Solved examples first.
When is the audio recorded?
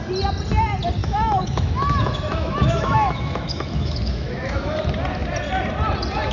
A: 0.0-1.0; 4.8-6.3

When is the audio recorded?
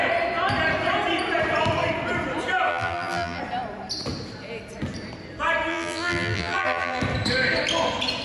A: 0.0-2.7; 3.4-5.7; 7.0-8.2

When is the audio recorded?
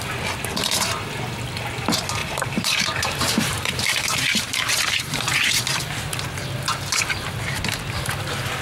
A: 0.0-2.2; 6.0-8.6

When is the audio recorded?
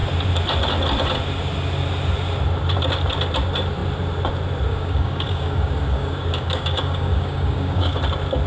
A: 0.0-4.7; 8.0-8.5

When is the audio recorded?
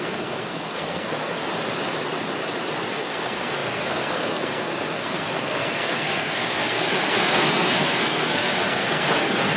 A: 1.4-2.9